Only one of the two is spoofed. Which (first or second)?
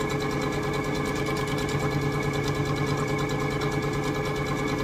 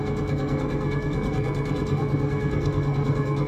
second